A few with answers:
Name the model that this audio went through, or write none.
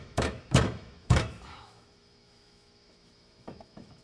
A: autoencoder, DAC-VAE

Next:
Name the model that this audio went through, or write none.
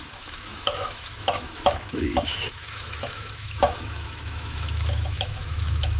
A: autoencoder, DAC-VAE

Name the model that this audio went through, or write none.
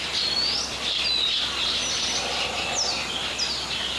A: none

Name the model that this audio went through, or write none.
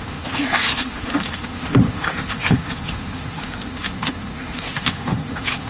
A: autoencoder, DAC-VAE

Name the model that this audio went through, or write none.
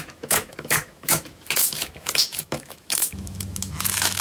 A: autoencoder, DAC-VAE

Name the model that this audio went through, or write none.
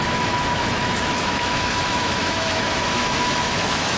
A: autoencoder, DAC-VAE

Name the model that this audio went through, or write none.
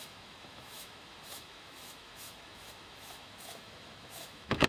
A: autoencoder, DAC-VAE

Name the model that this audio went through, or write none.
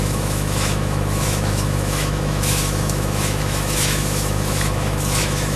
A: autoencoder, DAC-VAE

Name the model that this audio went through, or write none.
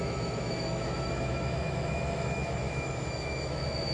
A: autoencoder, DAC-VAE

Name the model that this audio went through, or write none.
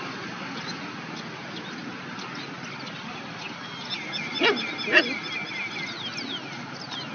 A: none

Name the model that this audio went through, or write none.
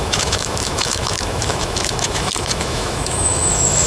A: autoencoder, DAC-VAE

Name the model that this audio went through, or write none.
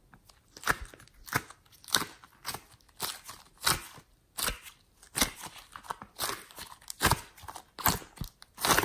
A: none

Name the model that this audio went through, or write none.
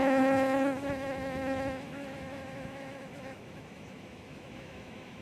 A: autoencoder, DAC-VAE